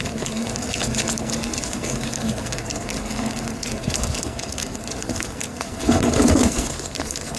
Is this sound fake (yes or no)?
yes